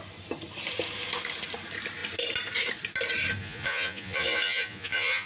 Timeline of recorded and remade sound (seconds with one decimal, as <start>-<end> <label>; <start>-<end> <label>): 0.0-3.4 recorded; 3.4-5.3 remade